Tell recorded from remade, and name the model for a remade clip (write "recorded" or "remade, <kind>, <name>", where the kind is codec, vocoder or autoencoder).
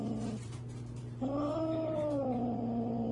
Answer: remade, vocoder, BigVGAN v2